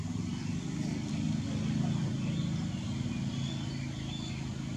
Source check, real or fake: real